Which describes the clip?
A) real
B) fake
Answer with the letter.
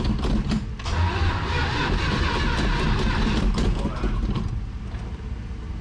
A